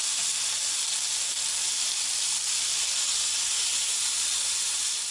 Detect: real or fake real